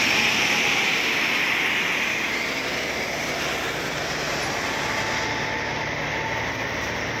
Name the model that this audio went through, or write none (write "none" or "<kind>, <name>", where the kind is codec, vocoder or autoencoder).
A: none